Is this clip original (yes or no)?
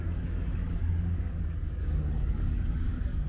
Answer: no